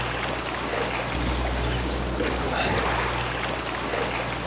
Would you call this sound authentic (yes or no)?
yes